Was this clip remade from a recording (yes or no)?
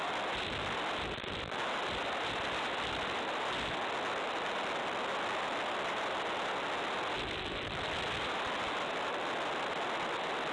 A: no